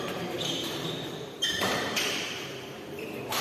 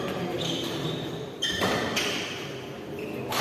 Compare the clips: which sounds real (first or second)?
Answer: second